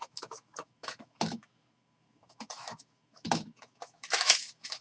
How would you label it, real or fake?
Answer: fake